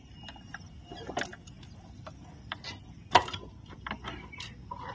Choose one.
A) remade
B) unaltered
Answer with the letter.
B